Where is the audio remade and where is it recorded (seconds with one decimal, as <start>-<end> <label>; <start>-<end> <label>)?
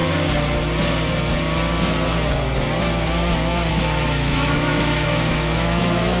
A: 0.0-3.7 recorded; 3.7-6.2 remade